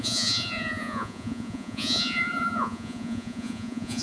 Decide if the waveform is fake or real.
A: fake